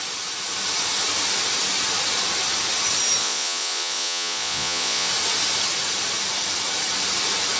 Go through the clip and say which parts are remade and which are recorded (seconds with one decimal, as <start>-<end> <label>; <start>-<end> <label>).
0.0-3.2 recorded; 3.2-5.1 remade; 5.1-7.6 recorded